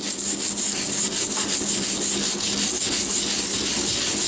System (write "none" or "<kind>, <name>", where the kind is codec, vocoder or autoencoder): none